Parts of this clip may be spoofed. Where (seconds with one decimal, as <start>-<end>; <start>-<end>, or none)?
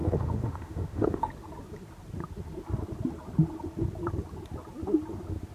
0.0-1.3